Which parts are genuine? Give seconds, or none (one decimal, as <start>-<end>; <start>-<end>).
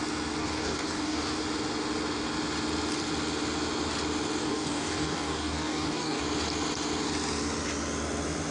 0.0-0.4; 1.4-4.4; 6.2-8.5